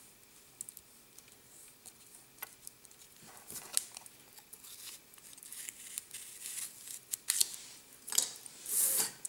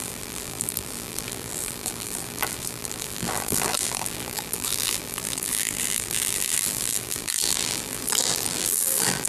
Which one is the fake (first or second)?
second